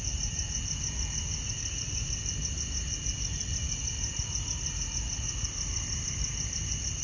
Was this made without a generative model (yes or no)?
yes